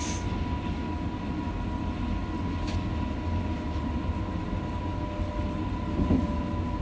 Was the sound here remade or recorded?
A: recorded